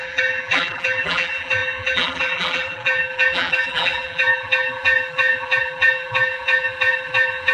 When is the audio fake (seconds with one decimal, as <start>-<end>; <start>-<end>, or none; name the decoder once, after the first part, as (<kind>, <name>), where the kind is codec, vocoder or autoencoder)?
0.0-7.5 (vocoder, BigVGAN v2)